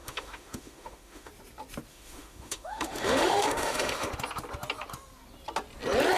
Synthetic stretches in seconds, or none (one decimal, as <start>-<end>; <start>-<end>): 0.0-1.3; 1.9-4.1